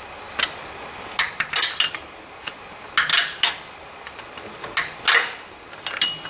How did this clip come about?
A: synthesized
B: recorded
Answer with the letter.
B